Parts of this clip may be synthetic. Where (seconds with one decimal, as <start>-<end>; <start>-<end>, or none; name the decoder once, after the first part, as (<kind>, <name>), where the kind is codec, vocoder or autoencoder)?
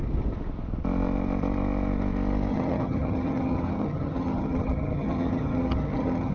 2.5-6.3 (vocoder, HiFi-GAN)